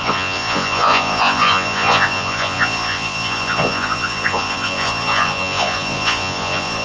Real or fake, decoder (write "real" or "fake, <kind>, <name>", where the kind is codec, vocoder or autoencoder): fake, vocoder, Vocos